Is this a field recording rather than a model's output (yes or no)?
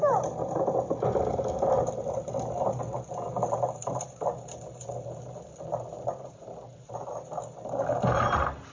yes